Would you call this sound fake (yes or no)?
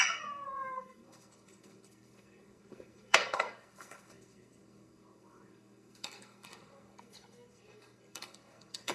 yes